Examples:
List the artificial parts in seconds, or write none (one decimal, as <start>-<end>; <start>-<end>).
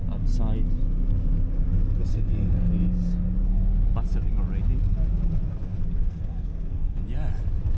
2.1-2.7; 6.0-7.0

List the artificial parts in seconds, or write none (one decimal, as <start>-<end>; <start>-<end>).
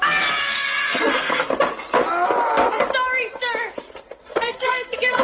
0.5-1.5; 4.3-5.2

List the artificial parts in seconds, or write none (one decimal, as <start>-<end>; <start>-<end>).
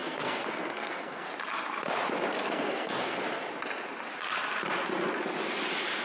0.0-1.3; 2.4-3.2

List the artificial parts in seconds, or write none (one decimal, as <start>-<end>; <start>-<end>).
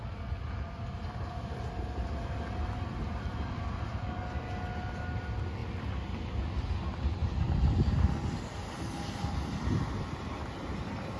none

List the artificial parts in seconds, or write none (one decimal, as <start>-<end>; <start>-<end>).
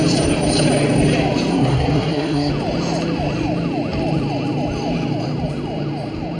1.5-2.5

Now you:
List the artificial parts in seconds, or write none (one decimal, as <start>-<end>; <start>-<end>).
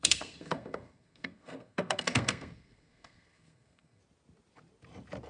0.0-4.0